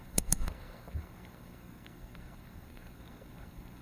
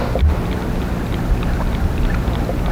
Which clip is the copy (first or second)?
first